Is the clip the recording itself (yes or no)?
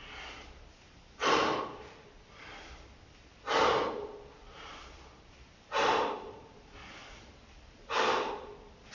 no